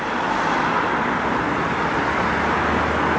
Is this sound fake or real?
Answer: real